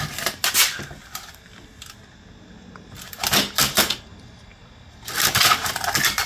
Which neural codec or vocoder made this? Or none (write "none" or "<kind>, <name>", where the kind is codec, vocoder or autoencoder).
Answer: none